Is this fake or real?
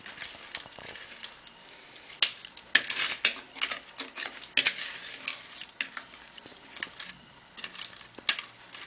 real